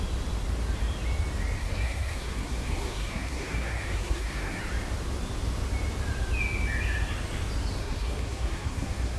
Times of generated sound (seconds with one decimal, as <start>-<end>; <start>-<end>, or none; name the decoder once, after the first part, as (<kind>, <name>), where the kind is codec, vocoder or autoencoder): 1.6-4.6 (codec, SNAC); 7.8-9.2